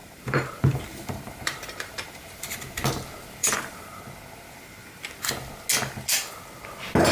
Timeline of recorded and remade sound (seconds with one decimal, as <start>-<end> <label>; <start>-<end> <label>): 0.0-2.4 remade; 2.4-3.4 recorded; 3.4-4.0 remade; 4.0-7.1 recorded